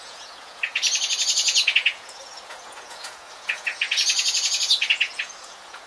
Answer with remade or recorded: remade